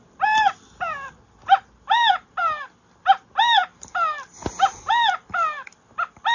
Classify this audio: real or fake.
real